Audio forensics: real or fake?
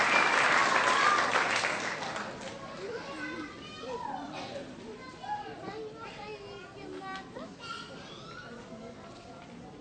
real